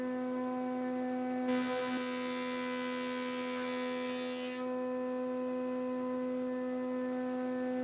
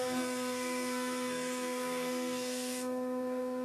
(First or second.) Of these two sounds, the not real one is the second